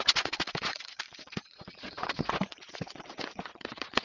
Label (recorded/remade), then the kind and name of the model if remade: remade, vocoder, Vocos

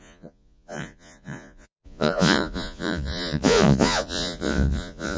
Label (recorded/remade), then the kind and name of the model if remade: remade, vocoder, Vocos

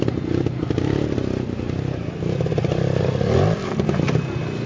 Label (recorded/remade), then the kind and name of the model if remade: recorded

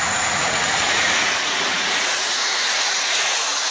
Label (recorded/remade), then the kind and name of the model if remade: remade, vocoder, Vocos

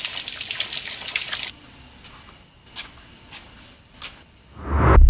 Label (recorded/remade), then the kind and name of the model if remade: recorded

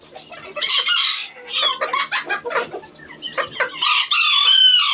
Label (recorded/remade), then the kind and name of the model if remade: recorded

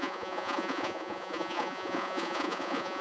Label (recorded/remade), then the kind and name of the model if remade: remade, vocoder, Vocos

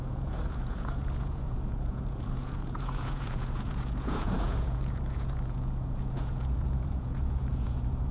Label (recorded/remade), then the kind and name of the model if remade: remade, vocoder, Vocos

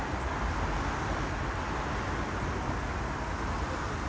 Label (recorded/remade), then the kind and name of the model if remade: recorded